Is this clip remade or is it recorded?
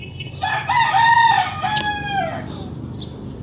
recorded